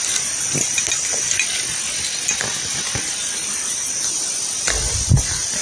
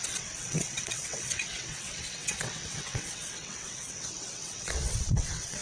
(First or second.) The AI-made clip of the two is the second